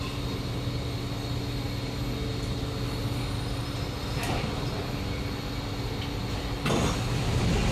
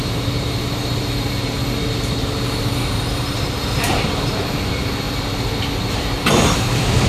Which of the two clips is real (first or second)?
first